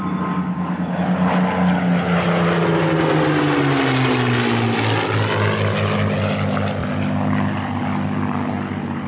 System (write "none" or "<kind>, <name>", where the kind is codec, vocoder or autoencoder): none